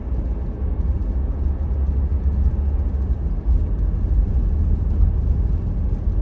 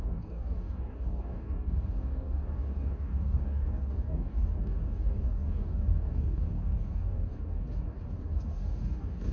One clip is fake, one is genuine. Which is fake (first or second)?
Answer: second